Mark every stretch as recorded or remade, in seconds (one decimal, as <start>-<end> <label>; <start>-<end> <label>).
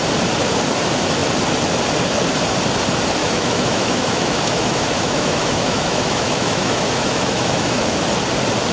0.0-3.2 recorded; 3.2-8.0 remade; 8.0-8.7 recorded